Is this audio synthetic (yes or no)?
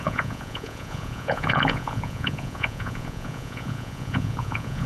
yes